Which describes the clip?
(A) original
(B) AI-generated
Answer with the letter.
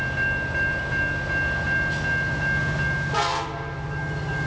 A